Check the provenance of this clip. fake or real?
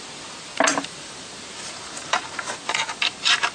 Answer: fake